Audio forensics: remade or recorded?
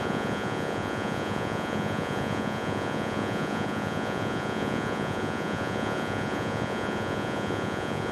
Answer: remade